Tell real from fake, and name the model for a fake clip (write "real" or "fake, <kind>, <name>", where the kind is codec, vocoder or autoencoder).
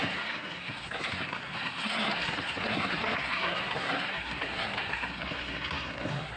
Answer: fake, codec, SNAC